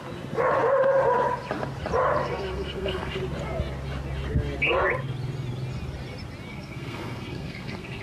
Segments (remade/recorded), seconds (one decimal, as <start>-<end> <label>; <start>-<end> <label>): 0.0-2.2 recorded; 2.2-3.2 remade; 3.2-6.5 recorded; 6.5-8.0 remade